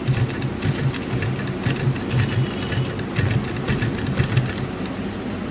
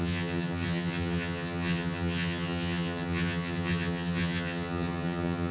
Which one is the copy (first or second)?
second